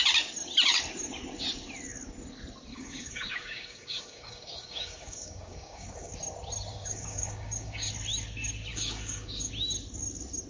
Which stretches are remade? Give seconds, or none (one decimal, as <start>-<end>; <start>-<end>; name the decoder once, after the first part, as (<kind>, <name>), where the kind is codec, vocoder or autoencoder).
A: 2.7-6.1 (codec, DAC); 6.7-7.9; 8.7-9.5